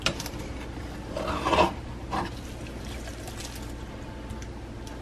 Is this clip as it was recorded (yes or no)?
yes